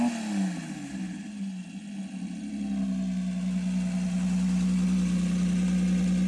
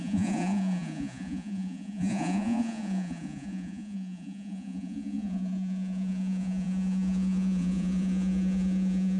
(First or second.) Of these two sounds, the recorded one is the first